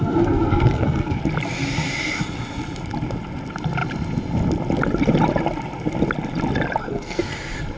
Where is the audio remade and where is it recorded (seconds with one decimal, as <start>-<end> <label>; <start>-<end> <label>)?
0.0-1.2 remade; 1.2-6.8 recorded; 6.8-7.3 remade; 7.3-7.8 recorded